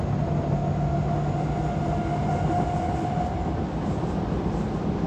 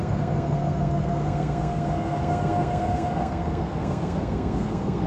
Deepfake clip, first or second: second